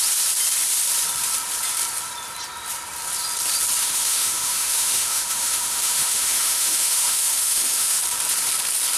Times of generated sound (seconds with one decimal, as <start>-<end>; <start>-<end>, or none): 3.8-8.0